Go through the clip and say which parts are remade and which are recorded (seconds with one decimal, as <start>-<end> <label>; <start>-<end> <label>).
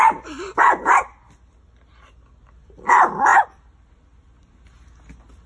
0.0-5.5 recorded